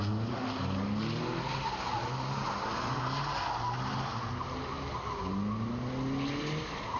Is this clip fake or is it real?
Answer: real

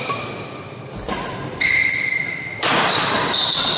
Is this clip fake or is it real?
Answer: fake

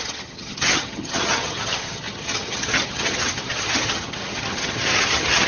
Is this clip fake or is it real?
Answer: fake